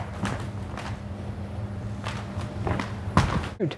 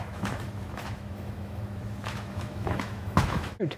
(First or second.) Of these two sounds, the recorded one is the first